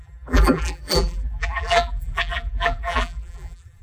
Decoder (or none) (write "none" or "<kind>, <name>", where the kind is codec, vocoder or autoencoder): vocoder, BigVGAN v2